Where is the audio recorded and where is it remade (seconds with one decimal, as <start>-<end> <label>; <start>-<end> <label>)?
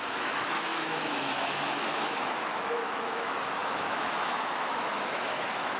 0.0-5.8 remade